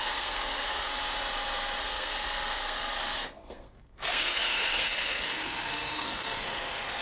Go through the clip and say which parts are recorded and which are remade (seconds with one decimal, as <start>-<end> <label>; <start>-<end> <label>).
0.0-0.9 remade; 0.9-1.8 recorded; 1.8-7.0 remade